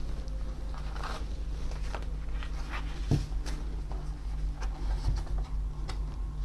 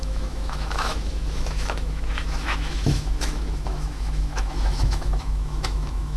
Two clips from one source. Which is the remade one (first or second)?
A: second